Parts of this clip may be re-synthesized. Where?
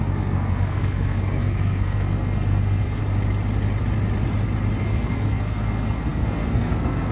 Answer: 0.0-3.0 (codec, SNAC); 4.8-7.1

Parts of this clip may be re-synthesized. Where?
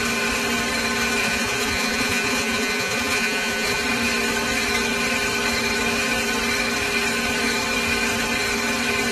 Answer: 1.2-3.8 (vocoder, Vocos)